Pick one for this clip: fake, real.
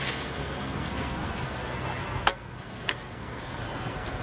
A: fake